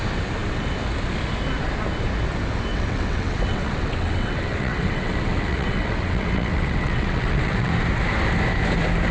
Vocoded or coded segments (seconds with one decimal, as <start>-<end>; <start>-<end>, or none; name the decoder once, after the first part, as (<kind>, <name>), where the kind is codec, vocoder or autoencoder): 2.7-7.7 (vocoder, WaveNeXt)